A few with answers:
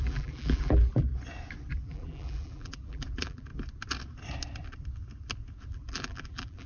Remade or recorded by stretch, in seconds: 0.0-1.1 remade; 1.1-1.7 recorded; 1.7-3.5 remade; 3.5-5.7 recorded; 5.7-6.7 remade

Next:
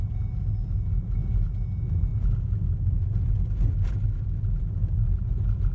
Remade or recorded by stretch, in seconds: 0.0-5.7 recorded